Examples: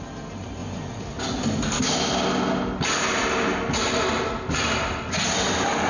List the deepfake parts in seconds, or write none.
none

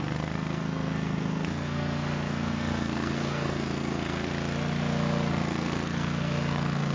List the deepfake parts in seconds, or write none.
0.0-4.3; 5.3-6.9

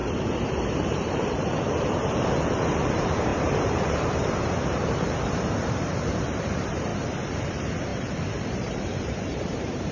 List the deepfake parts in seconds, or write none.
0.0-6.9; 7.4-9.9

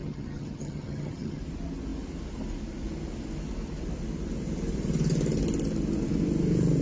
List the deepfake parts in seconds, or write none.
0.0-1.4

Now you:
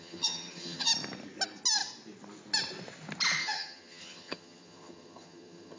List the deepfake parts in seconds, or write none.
0.0-0.9; 3.4-5.8

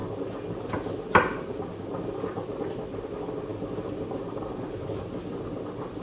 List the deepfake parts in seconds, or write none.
3.5-4.2

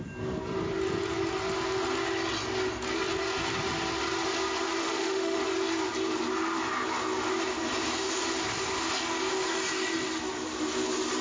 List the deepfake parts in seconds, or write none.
4.8-5.4

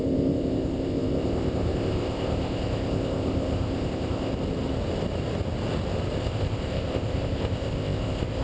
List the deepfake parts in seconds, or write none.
0.0-4.3; 6.2-8.4